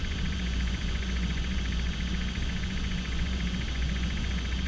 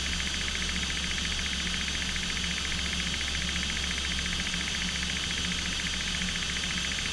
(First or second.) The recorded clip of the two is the second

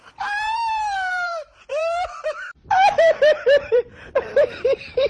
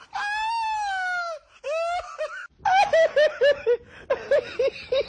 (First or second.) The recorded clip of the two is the second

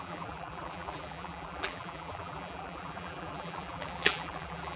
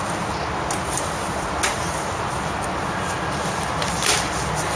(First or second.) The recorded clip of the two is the second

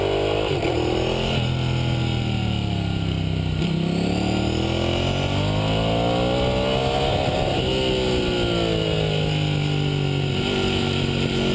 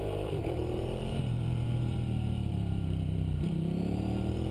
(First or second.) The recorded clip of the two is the first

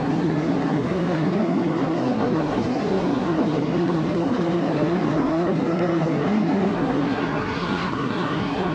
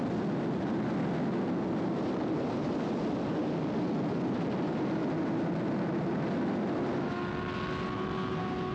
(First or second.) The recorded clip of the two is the second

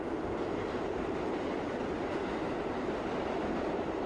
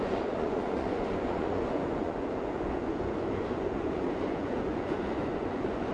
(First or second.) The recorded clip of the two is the first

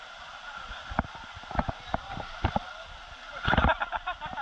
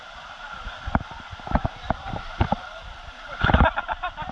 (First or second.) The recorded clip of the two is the first